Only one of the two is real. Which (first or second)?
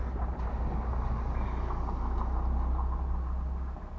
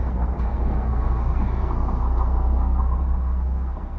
first